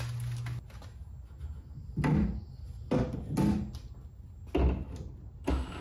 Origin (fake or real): real